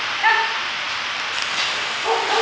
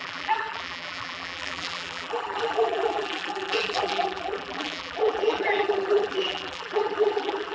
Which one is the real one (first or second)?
first